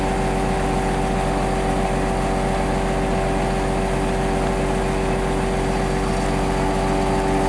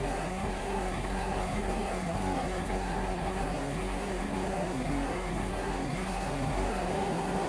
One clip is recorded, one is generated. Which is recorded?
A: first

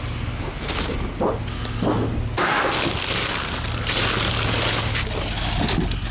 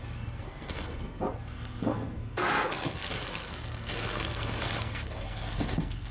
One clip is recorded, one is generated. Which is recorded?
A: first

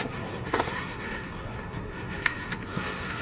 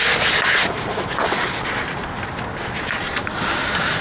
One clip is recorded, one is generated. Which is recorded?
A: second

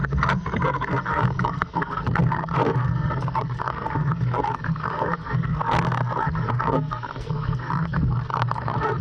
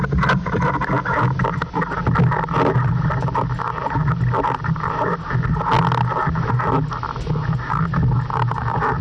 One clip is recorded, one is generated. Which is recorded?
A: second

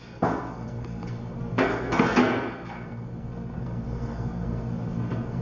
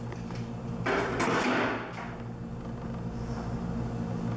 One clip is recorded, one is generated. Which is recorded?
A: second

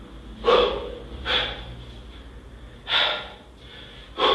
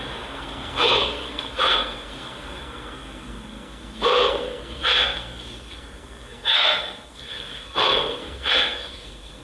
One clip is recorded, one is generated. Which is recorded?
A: first